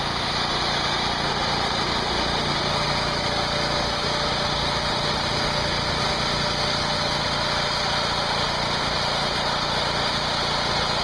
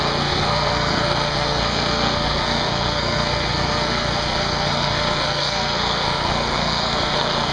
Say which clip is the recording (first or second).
first